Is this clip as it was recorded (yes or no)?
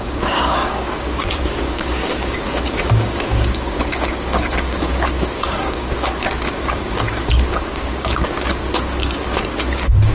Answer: no